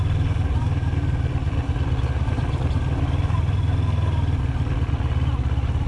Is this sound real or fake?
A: real